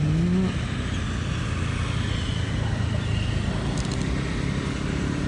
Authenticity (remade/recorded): recorded